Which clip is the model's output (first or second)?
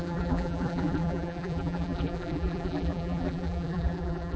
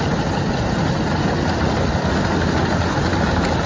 first